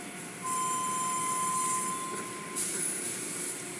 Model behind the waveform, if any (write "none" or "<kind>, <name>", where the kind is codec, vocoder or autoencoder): none